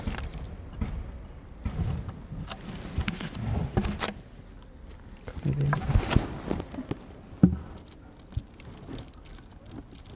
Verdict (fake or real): real